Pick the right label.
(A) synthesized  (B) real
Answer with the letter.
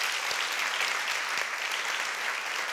B